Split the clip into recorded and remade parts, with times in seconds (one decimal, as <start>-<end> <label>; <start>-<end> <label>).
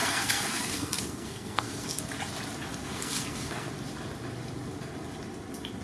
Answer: 0.0-2.0 remade; 2.0-2.7 recorded; 2.7-3.7 remade; 3.7-5.8 recorded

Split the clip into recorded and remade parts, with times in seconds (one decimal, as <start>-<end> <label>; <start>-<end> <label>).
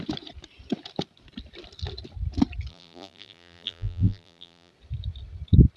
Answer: 0.0-2.7 recorded; 2.7-4.7 remade; 4.7-5.8 recorded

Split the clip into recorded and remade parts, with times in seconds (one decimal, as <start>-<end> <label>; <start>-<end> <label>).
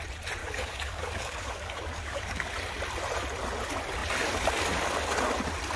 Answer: 0.0-0.4 recorded; 0.4-2.5 remade; 2.5-5.8 recorded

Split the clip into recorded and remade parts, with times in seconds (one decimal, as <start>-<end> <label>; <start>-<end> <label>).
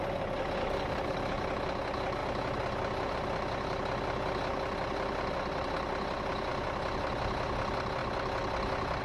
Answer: 0.0-0.6 recorded; 0.6-1.2 remade; 1.2-9.0 recorded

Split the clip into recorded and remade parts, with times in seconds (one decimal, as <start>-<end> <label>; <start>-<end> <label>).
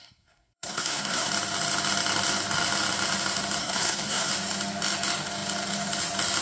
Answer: 0.0-1.3 remade; 1.3-3.6 recorded; 3.6-4.3 remade; 4.3-6.4 recorded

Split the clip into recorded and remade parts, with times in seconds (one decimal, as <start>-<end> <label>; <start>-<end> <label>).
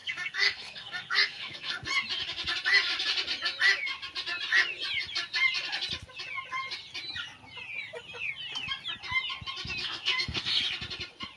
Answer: 0.0-1.9 remade; 1.9-9.8 recorded; 9.8-10.6 remade; 10.6-11.4 recorded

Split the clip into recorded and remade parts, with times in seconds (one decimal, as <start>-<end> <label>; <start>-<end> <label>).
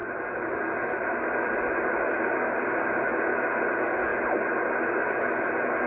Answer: 0.0-5.9 recorded